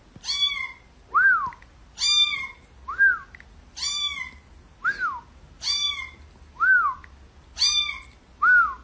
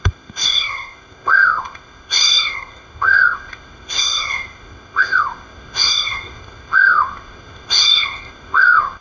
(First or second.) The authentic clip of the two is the first